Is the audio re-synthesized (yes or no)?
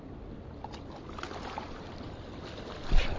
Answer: no